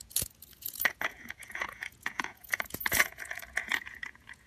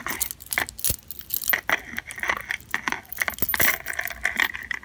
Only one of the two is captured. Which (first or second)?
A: second